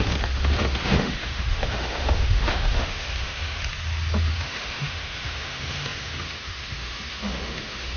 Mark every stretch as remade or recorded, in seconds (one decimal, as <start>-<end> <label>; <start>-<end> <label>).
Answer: 0.0-3.6 remade; 3.6-4.3 recorded; 4.3-8.0 remade